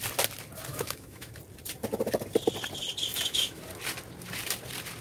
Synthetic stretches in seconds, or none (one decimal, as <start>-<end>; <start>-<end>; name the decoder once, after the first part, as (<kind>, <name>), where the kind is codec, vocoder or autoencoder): 0.7-1.3 (autoencoder, DAC-VAE); 3.1-3.6